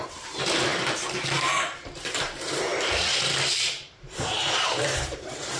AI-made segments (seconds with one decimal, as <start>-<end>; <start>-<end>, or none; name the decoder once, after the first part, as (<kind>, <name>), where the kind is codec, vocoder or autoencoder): 0.0-5.6 (vocoder, BigVGAN v2)